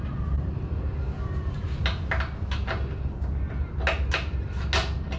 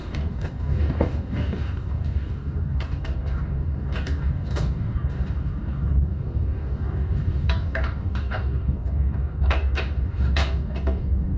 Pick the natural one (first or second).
first